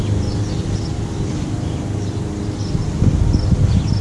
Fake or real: real